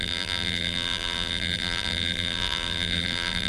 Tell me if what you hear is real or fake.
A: fake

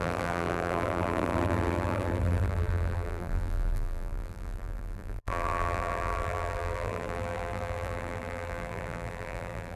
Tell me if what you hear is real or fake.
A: fake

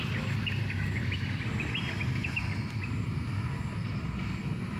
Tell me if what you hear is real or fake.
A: real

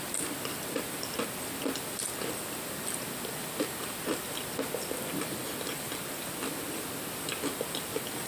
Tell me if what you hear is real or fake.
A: real